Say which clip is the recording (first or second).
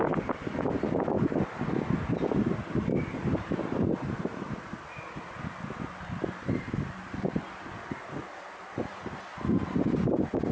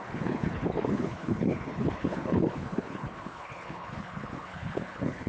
first